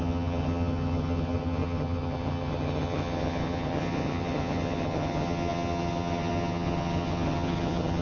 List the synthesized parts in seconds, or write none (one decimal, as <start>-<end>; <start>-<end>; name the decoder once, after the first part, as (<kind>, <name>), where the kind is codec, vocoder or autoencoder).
0.0-8.0 (vocoder, HiFi-GAN)